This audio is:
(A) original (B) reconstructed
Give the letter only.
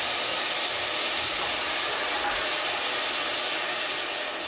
A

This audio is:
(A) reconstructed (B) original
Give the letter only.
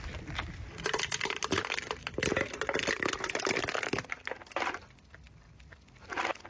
B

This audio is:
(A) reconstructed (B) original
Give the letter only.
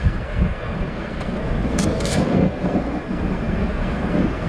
A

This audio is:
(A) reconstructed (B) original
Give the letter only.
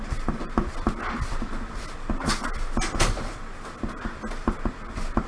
B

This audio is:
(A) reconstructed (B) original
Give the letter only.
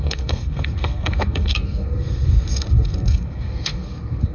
A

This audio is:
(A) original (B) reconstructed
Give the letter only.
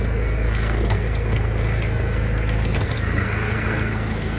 B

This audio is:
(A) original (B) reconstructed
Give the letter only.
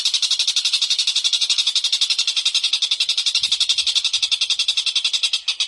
A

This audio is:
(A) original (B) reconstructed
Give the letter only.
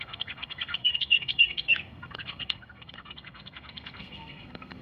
B